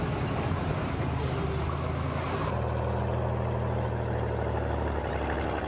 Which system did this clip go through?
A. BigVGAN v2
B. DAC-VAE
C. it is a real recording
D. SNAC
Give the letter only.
C